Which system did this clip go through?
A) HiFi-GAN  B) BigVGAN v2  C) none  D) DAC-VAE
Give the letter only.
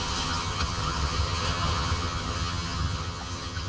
A